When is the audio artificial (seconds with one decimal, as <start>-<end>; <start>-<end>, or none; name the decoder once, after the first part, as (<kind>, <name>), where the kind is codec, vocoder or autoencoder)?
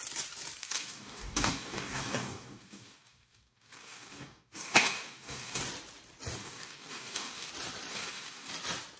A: 0.6-5.6 (codec, DAC); 6.4-7.5; 7.9-8.5